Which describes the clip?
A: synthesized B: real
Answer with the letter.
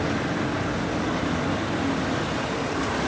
B